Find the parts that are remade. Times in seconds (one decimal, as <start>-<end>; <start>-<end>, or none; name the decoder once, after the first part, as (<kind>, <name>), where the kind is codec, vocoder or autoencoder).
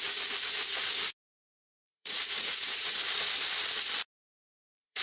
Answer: 1.6-2.9 (vocoder, Vocos); 4.4-5.0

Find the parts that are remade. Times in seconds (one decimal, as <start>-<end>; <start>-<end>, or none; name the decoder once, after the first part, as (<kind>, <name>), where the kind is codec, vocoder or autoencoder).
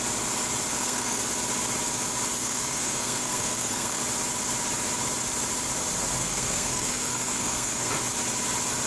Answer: 0.7-1.2 (codec, SNAC); 2.4-4.0; 6.2-7.9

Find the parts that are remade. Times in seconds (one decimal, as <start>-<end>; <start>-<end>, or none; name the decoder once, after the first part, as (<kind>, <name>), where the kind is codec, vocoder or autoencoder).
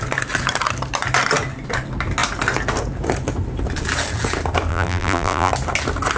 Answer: 4.7-5.5 (vocoder, BigVGAN v2)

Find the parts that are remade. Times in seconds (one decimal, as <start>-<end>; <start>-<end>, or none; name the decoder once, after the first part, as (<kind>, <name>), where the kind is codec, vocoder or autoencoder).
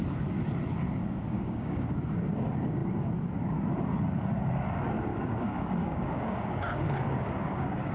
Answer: 1.0-1.8 (codec, DAC); 5.1-7.9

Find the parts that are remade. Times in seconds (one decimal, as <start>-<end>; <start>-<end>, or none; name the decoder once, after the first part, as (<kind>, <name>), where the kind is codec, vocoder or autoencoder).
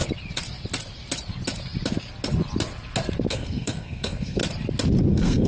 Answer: 3.3-4.4 (codec, SNAC); 5.1-5.5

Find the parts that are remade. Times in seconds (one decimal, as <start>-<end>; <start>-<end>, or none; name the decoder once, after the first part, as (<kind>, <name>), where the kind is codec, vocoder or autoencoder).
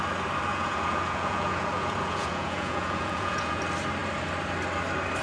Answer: 0.5-3.6 (vocoder, Vocos)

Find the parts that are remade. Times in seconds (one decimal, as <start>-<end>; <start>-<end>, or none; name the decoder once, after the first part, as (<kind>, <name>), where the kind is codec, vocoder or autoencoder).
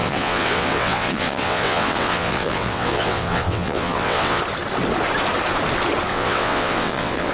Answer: 0.0-4.4 (vocoder, WaveNeXt); 6.1-7.3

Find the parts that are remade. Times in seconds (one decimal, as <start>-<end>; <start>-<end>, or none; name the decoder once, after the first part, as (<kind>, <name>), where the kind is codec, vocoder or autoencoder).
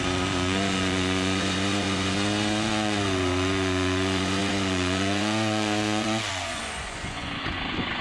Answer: 0.0-8.0 (vocoder, Vocos)